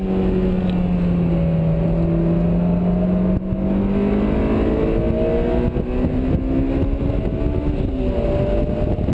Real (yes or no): yes